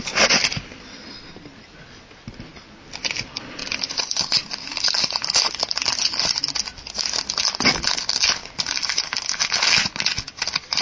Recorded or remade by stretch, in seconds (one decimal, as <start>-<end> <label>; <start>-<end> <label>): 0.0-3.6 recorded; 3.6-6.8 remade; 6.8-8.4 recorded; 8.4-9.0 remade; 9.0-10.8 recorded